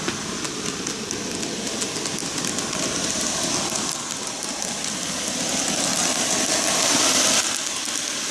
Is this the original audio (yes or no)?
yes